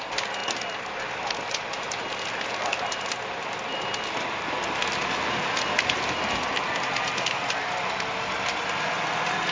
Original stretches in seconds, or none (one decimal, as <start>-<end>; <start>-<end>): 0.0-9.5